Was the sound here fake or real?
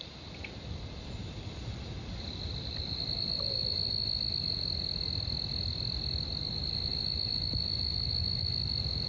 real